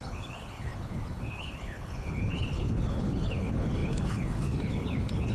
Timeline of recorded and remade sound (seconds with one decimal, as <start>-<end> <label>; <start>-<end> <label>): 0.0-5.3 remade